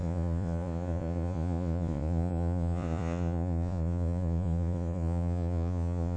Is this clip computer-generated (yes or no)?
yes